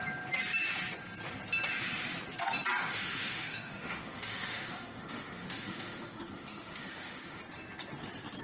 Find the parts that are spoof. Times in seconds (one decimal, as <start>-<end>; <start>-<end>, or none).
2.8-7.4